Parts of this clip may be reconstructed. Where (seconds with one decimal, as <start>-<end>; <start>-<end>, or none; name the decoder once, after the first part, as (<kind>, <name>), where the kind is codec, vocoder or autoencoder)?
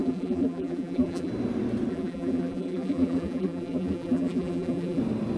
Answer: 0.0-1.3 (vocoder, BigVGAN v2); 1.9-5.0